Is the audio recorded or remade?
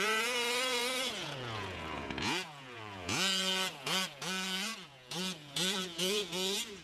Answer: remade